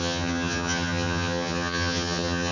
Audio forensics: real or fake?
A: fake